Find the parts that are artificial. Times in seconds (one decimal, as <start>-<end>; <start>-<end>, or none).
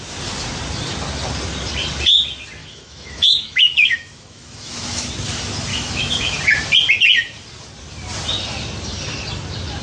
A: 2.6-5.1; 5.7-6.3